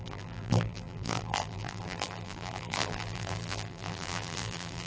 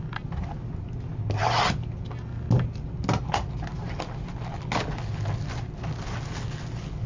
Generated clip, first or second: first